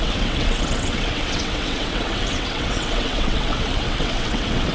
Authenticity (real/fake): fake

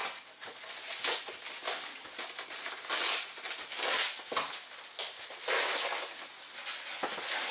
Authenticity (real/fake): real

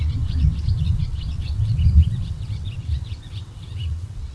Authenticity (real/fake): fake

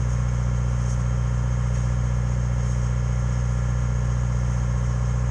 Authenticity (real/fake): real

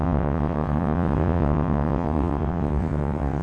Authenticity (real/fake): fake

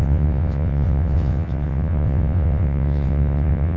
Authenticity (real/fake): fake